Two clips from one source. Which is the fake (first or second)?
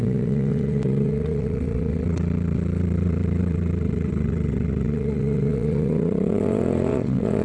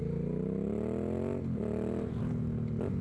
first